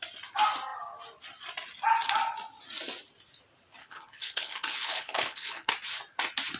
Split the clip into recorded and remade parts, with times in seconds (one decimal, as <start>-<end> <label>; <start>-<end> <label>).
0.0-3.8 recorded; 3.8-5.7 remade; 5.7-6.6 recorded